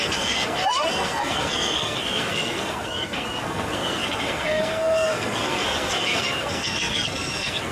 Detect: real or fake fake